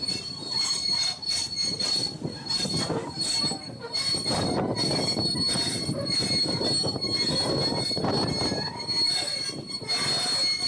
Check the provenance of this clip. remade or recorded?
recorded